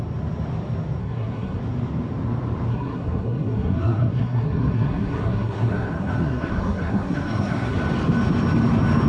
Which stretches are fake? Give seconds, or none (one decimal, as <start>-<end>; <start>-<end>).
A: 1.0-1.6; 2.7-7.8